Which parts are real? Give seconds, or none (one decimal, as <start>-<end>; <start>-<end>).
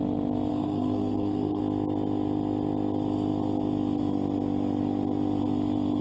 0.0-0.5; 1.6-6.0